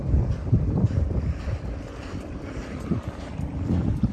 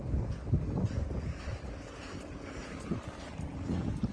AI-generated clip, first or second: first